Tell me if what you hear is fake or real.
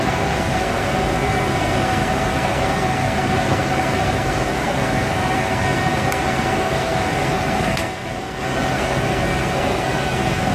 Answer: fake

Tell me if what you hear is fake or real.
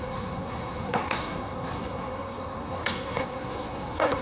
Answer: fake